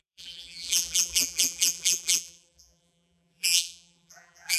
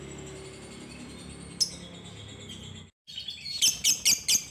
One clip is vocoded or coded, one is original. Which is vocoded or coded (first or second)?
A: first